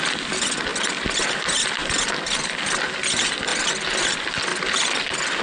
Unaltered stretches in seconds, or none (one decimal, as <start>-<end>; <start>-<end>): 0.0-5.4